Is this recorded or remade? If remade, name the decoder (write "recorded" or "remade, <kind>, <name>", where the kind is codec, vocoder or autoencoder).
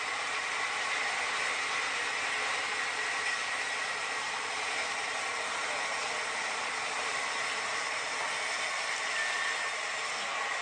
recorded